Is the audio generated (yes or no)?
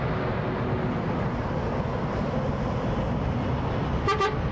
no